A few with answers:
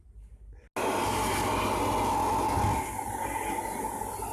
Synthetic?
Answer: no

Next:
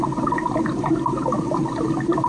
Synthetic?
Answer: no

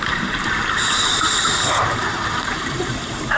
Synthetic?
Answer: yes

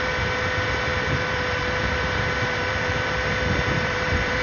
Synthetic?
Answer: yes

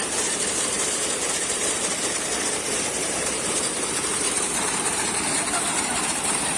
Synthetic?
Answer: yes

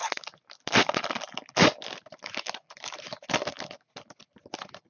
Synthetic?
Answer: no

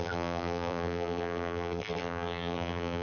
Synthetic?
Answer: yes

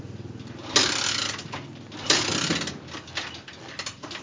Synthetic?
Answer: no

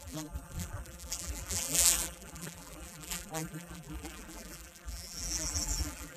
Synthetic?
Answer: yes